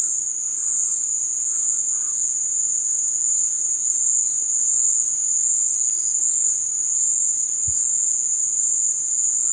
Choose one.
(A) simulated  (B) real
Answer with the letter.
A